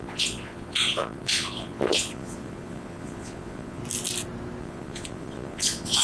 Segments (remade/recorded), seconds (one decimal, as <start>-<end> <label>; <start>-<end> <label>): 0.0-3.8 remade; 3.8-4.6 recorded; 4.6-6.0 remade